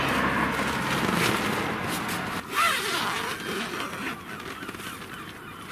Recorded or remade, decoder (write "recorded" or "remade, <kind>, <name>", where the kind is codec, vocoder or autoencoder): recorded